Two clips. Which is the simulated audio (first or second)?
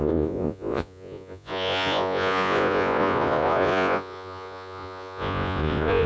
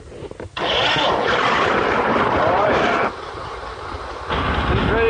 first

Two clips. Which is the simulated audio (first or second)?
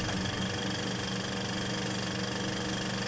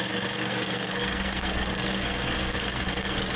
second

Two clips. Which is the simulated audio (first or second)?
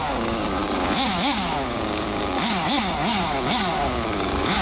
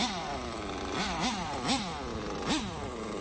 first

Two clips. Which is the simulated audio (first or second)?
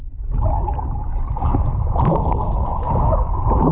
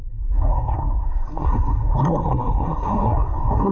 second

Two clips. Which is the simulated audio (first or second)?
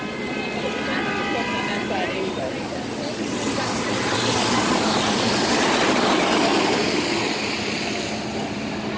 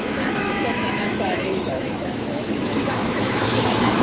second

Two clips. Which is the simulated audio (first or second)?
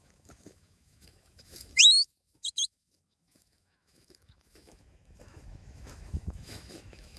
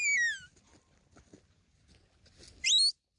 first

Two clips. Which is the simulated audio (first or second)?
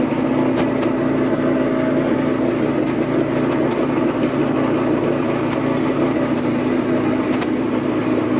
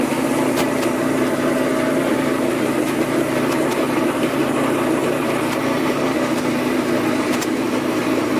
second